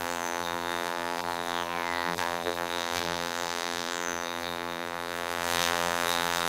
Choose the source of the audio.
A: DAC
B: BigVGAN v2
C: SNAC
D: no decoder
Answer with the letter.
B